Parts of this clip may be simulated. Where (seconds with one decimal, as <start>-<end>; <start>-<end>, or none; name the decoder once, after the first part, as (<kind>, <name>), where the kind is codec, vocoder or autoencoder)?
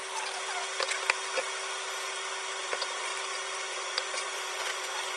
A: 2.6-3.1 (vocoder, Vocos); 3.7-5.2